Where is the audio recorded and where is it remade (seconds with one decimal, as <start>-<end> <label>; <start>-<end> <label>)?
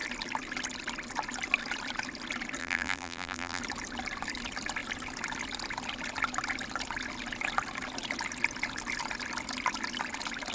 0.0-2.6 recorded; 2.6-3.6 remade; 3.6-10.5 recorded